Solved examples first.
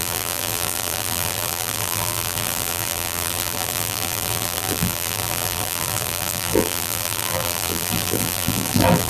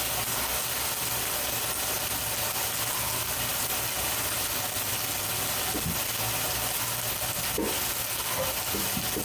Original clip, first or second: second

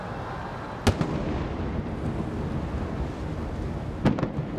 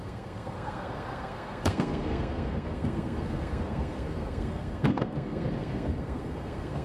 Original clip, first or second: first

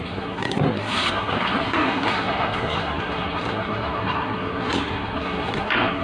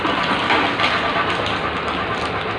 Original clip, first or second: second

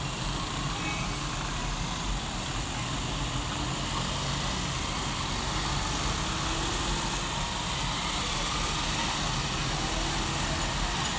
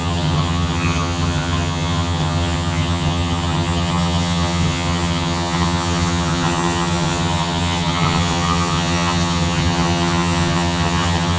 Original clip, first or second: first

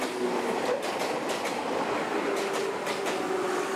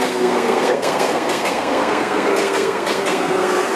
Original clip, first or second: first